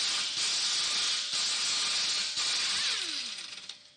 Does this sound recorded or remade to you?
recorded